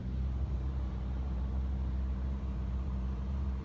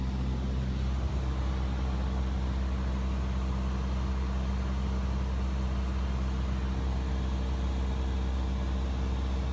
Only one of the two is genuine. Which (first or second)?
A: second